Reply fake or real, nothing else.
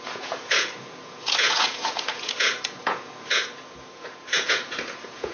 fake